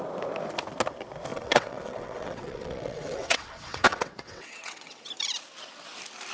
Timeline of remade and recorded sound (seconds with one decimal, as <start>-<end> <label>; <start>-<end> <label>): 0.0-1.3 recorded; 1.3-5.1 remade; 5.1-6.3 recorded